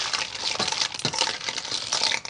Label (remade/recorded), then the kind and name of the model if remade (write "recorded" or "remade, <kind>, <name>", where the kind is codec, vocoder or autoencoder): recorded